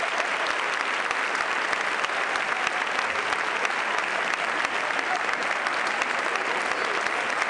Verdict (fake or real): real